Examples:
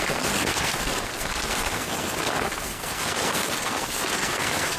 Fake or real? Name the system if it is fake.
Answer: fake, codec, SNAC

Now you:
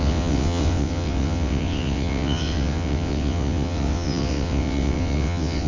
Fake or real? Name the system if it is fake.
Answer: fake, vocoder, WaveNeXt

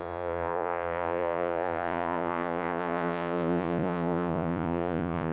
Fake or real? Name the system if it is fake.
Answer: fake, vocoder, Vocos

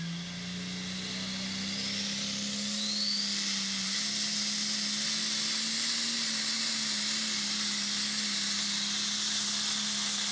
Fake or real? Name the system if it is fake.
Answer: real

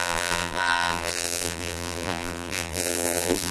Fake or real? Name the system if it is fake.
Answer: fake, vocoder, BigVGAN v2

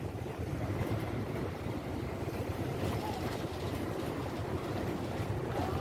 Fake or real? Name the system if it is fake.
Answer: fake, vocoder, BigVGAN v2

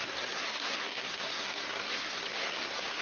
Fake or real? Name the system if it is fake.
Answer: fake, codec, SNAC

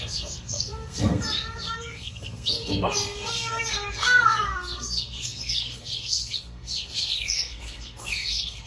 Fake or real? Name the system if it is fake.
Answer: fake, codec, SNAC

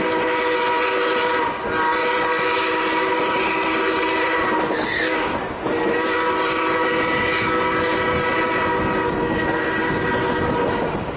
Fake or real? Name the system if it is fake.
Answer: real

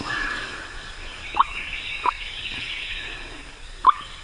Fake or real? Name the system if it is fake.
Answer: fake, codec, DAC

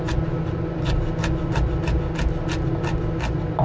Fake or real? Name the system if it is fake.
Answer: real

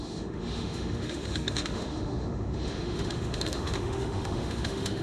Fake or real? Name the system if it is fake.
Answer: fake, autoencoder, DAC-VAE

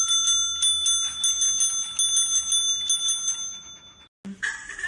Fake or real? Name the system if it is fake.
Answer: real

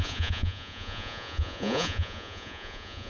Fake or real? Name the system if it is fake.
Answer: fake, vocoder, Vocos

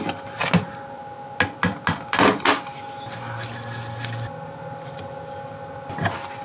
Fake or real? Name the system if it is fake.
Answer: real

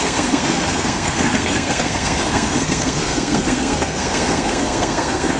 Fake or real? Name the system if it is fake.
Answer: fake, codec, SNAC